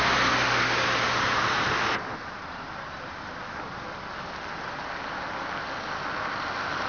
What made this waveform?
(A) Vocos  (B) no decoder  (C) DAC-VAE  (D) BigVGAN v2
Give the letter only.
B